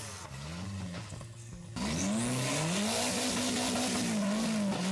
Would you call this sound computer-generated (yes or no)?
no